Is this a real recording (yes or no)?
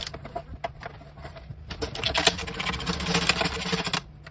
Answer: yes